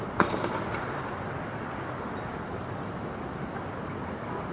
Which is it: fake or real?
real